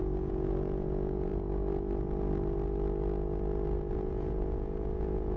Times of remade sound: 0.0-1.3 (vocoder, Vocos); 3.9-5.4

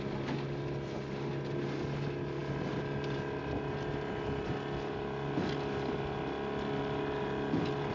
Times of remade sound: none

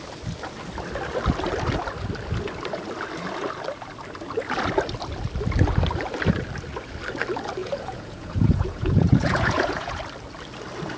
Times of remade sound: 7.6-10.0 (vocoder, Vocos)

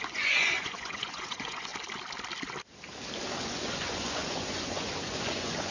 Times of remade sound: 0.0-1.7 (vocoder, Vocos); 3.4-5.7

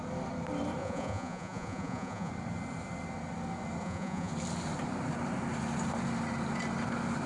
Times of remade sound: 0.8-2.3 (vocoder, Vocos); 3.8-4.3

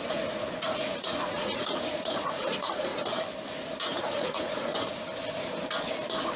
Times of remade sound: 0.0-2.9 (vocoder, Vocos); 4.0-4.7

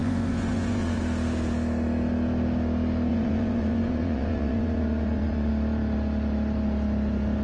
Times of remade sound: 0.0-1.0 (vocoder, Vocos); 3.1-5.5